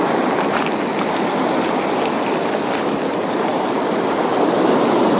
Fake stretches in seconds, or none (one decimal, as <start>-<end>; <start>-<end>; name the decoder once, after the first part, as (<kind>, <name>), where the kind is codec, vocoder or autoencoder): none